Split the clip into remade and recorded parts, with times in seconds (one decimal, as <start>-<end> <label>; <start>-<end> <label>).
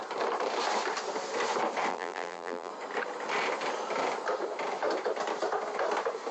0.0-1.9 recorded; 1.9-2.7 remade; 2.7-6.3 recorded